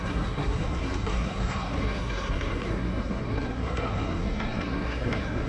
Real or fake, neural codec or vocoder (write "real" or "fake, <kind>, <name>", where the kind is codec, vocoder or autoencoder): fake, codec, SNAC